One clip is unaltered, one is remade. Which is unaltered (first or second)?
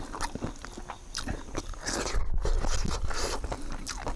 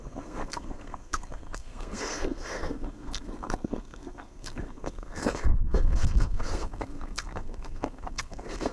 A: first